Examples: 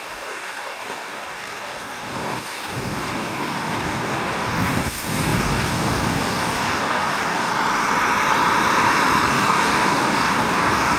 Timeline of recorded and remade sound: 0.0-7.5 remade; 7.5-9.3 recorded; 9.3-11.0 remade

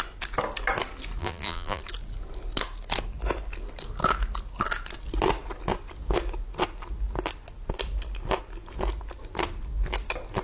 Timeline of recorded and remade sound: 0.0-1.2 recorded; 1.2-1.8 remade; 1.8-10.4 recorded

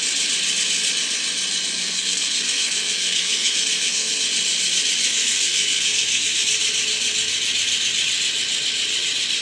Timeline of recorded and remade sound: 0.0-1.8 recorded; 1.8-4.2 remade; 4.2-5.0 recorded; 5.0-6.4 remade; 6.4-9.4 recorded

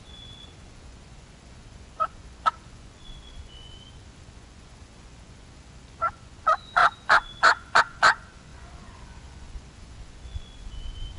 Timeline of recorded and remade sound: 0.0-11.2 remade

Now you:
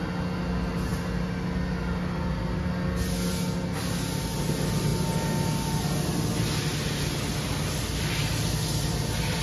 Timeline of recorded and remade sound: 0.0-9.4 recorded